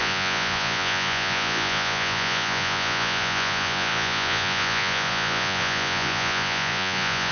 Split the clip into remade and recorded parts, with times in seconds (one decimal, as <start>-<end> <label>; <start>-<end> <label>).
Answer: 0.0-7.3 remade